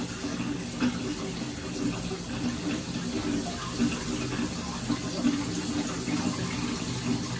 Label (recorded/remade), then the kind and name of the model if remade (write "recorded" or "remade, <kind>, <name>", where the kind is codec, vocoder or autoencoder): recorded